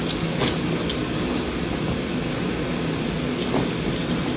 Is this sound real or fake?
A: real